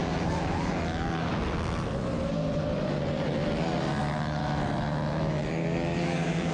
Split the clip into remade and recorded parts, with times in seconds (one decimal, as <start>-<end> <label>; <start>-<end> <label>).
0.0-1.3 remade; 1.3-4.0 recorded; 4.0-4.4 remade; 4.4-5.1 recorded; 5.1-6.5 remade